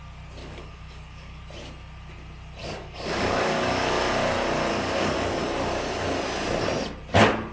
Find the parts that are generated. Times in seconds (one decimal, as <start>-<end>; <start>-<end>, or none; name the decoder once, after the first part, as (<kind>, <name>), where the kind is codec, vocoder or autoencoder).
0.4-1.4 (codec, DAC); 2.6-4.1; 4.7-5.4